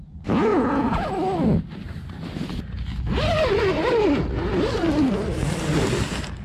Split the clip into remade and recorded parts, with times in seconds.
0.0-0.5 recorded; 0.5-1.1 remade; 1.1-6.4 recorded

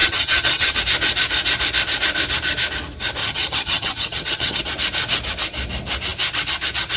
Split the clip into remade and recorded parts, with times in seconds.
0.0-0.8 remade; 0.8-3.2 recorded; 3.2-4.6 remade; 4.6-7.0 recorded

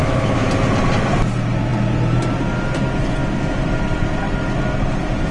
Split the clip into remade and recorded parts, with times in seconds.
0.0-0.5 remade; 0.5-5.3 recorded

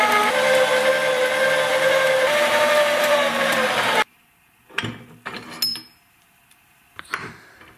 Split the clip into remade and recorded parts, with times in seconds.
0.0-1.7 recorded; 1.7-4.5 remade; 4.5-5.7 recorded; 5.7-7.3 remade; 7.3-7.8 recorded

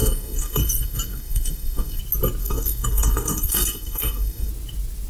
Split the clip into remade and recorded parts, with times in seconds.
0.0-2.0 remade; 2.0-2.4 recorded; 2.4-4.5 remade; 4.5-5.1 recorded

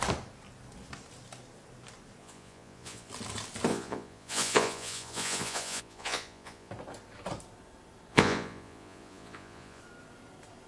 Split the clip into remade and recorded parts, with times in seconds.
0.0-2.2 recorded; 2.2-3.1 remade; 3.1-3.7 recorded; 3.7-6.7 remade; 6.7-8.1 recorded; 8.1-9.8 remade; 9.8-10.7 recorded

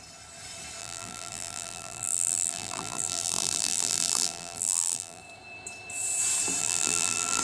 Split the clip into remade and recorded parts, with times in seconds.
0.0-0.8 recorded; 0.8-5.2 remade; 5.2-6.6 recorded; 6.6-7.4 remade

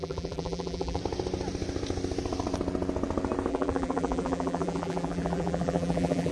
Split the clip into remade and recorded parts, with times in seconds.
0.0-1.0 remade; 1.0-3.5 recorded; 3.5-6.3 remade